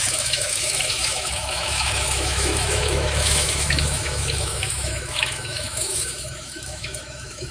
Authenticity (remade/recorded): remade